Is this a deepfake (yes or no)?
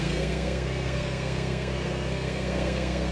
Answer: yes